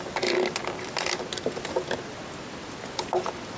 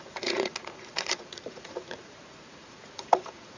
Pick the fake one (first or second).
second